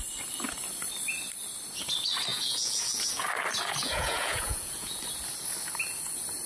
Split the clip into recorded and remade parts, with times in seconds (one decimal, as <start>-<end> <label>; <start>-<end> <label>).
0.0-2.3 recorded; 2.3-3.3 remade; 3.3-3.8 recorded; 3.8-5.0 remade; 5.0-6.5 recorded